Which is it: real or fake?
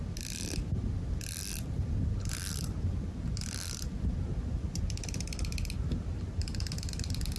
real